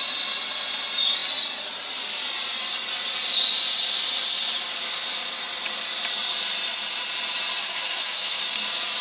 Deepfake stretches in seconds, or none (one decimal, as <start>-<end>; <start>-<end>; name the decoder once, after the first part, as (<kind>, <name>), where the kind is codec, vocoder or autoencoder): 7.6-8.4 (autoencoder, DAC-VAE)